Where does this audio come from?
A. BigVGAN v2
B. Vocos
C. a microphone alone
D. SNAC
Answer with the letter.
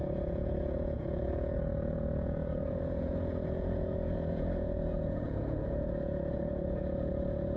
B